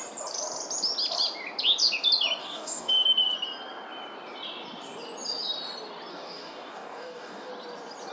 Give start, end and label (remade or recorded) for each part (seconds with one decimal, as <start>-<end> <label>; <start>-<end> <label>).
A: 0.0-2.4 recorded; 2.4-2.9 remade; 2.9-6.1 recorded; 6.1-7.5 remade; 7.5-8.1 recorded